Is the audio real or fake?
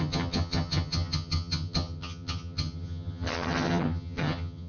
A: fake